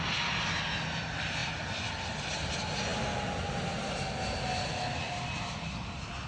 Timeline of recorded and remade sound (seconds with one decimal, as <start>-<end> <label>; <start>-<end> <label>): 0.0-6.3 recorded